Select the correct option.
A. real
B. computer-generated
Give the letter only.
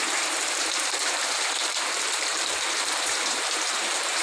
B